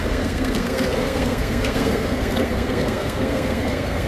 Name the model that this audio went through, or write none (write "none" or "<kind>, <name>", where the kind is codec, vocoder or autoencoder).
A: codec, SNAC